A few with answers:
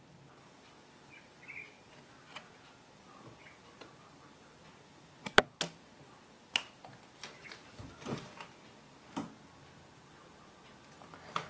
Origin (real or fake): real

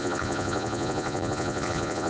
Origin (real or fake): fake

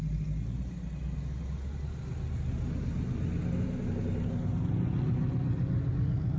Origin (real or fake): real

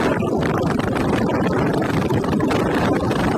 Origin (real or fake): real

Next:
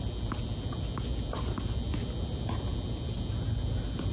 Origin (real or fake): real